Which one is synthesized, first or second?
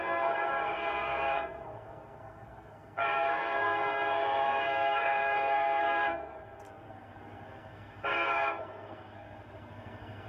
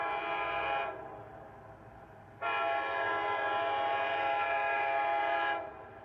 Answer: first